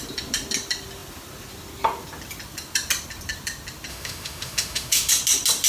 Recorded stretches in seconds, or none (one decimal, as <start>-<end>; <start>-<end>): 0.0-3.9; 5.1-5.7